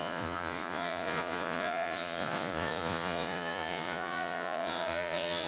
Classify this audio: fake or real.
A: fake